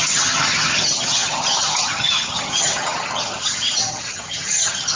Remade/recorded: remade